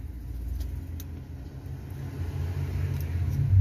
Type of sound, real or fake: real